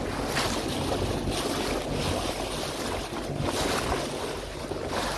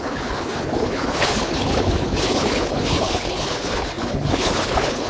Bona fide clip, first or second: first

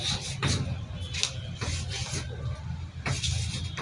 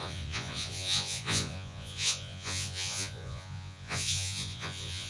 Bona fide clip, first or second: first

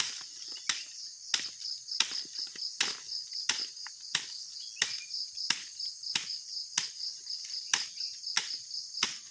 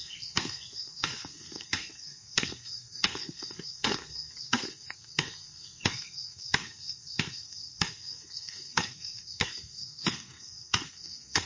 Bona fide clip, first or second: first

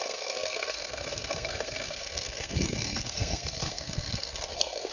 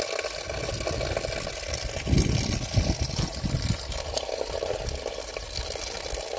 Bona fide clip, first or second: second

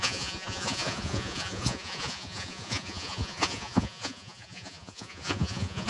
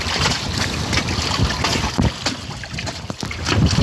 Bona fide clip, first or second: second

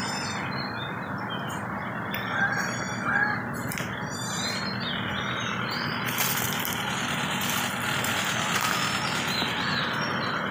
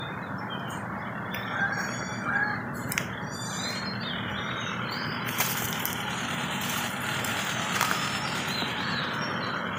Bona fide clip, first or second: first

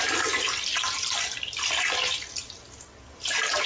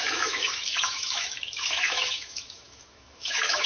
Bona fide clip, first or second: first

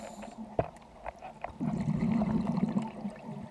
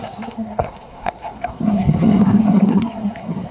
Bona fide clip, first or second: first